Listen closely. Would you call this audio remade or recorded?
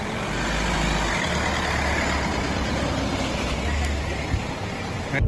recorded